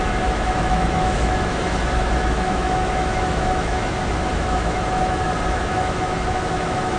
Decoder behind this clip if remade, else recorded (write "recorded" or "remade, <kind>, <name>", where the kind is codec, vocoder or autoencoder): remade, autoencoder, DAC-VAE